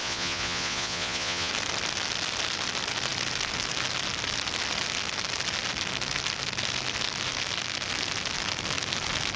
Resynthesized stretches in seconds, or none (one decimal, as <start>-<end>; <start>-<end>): 0.0-1.5